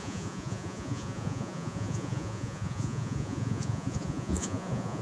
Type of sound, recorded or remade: remade